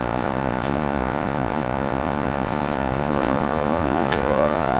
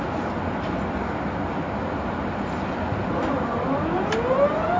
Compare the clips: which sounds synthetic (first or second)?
first